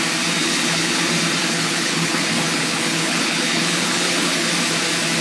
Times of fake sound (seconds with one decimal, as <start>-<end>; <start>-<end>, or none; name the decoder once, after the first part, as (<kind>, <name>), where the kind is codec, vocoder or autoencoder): 0.4-1.0 (codec, HILCodec); 1.4-4.5